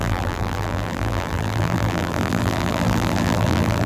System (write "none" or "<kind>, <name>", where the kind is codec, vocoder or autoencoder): vocoder, BigVGAN v2